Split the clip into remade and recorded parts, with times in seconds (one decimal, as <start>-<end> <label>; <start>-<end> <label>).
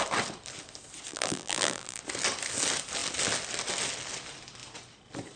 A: 0.0-1.1 recorded; 1.1-2.0 remade; 2.0-5.4 recorded